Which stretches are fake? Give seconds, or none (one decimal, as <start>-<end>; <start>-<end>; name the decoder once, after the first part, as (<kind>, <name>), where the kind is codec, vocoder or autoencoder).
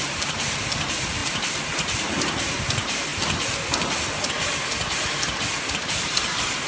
0.0-1.2 (vocoder, BigVGAN v2); 1.8-3.1; 5.6-6.7